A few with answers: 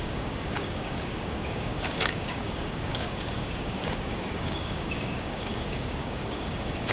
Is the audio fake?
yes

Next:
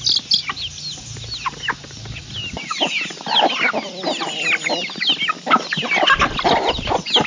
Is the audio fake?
no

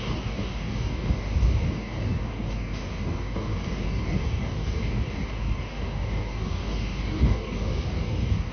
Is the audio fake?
yes